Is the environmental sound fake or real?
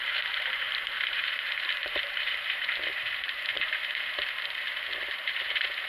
fake